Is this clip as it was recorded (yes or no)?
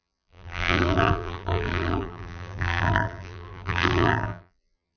no